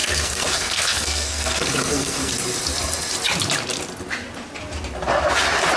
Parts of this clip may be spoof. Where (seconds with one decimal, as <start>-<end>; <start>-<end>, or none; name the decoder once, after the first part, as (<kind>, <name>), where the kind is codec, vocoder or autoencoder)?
0.0-2.3 (codec, SNAC)